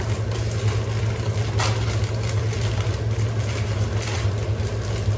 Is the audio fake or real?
real